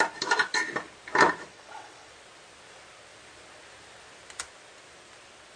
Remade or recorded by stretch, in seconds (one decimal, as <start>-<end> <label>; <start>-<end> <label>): 0.0-1.5 recorded; 1.5-2.1 remade; 2.1-5.6 recorded